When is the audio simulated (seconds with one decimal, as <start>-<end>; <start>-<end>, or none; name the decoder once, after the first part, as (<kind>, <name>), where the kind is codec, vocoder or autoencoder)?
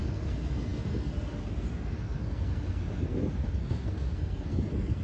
0.0-5.0 (codec, SNAC)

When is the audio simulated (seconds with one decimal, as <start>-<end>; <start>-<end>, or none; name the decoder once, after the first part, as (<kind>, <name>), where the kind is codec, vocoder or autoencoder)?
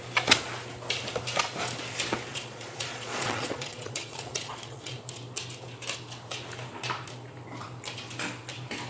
2.3-5.0 (vocoder, Vocos)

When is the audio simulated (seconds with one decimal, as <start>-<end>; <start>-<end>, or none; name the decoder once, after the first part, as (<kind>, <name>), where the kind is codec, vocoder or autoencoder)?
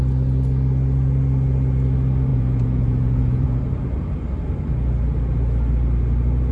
2.3-3.6 (vocoder, Vocos)